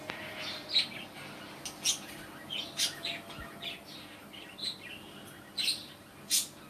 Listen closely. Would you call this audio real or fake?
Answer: real